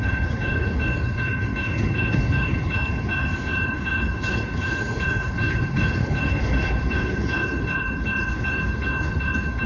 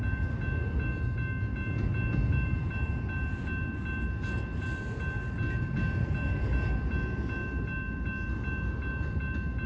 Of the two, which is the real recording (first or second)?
second